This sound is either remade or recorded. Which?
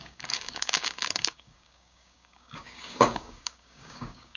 remade